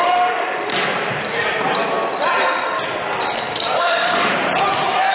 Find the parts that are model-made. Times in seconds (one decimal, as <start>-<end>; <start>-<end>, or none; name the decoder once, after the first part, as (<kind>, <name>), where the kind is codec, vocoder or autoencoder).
0.0-0.7 (autoencoder, DAC-VAE); 3.8-4.3